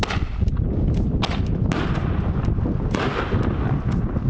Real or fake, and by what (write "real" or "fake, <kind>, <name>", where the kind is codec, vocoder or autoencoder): real